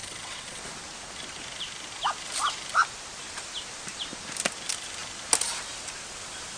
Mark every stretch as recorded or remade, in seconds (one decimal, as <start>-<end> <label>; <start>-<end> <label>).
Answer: 0.0-0.6 remade; 0.6-6.6 recorded